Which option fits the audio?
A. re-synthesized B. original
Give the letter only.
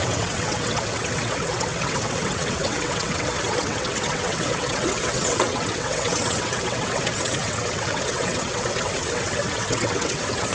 A